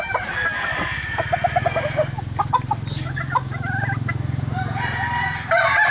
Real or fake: real